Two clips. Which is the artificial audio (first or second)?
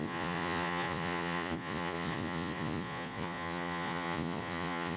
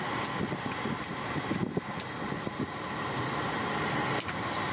first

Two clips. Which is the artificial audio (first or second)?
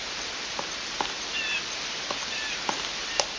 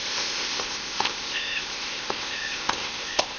second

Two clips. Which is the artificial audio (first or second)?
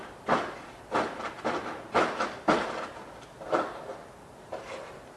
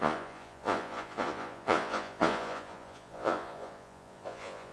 second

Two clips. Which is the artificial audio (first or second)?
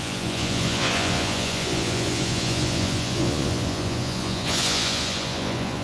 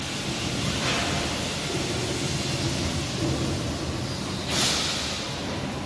first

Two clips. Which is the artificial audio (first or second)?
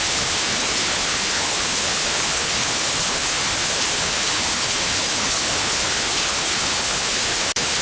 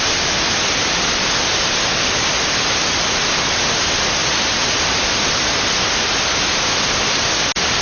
first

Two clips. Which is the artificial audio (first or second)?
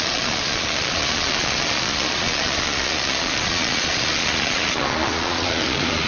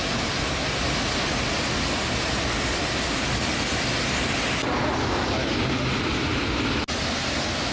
first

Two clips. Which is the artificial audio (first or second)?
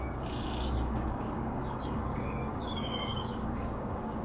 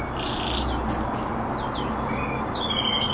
first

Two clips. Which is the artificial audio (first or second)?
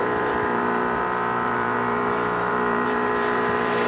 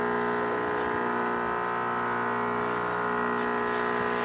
first